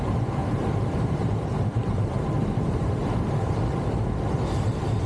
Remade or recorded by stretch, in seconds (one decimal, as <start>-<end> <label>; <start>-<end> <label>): 0.0-0.4 recorded; 0.4-3.5 remade; 3.5-5.1 recorded